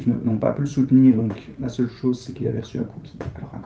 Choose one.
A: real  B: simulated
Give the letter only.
B